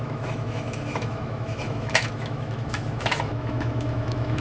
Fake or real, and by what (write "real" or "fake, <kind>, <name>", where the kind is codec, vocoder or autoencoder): fake, autoencoder, DAC-VAE